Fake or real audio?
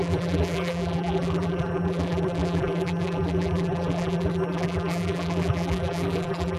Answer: fake